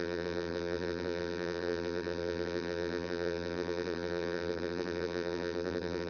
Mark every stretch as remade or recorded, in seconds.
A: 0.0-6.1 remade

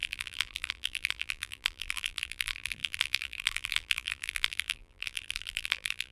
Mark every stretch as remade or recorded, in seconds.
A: 0.0-6.1 remade

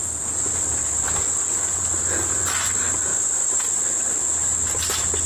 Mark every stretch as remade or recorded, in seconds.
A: 0.0-5.3 recorded

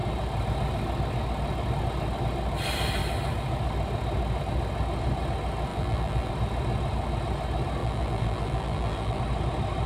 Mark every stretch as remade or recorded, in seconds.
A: 0.0-5.7 recorded; 5.7-6.3 remade; 6.3-7.8 recorded; 7.8-9.2 remade; 9.2-9.9 recorded

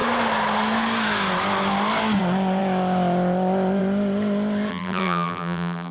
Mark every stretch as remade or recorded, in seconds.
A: 0.0-4.7 recorded; 4.7-5.9 remade

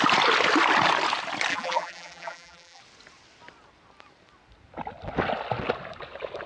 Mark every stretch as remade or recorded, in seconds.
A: 0.0-1.5 recorded; 1.5-2.8 remade; 2.8-6.5 recorded

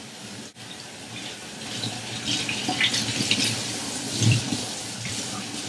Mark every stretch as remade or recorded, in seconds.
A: 0.0-3.6 recorded; 3.6-5.7 remade

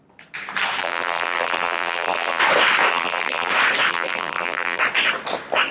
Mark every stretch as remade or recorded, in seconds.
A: 0.0-0.8 recorded; 0.8-2.4 remade; 2.4-2.9 recorded; 2.9-3.5 remade; 3.5-3.9 recorded; 3.9-4.8 remade; 4.8-5.7 recorded